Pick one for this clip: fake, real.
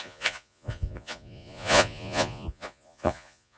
fake